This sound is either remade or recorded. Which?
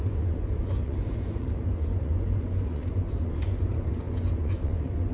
remade